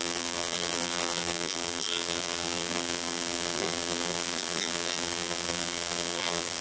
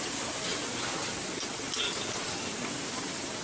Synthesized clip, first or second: first